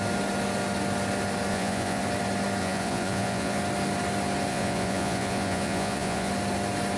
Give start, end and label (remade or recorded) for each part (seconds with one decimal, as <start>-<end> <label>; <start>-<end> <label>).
0.0-1.5 recorded; 1.5-2.0 remade; 2.0-2.6 recorded; 2.6-3.6 remade; 3.6-4.5 recorded; 4.5-6.3 remade; 6.3-7.0 recorded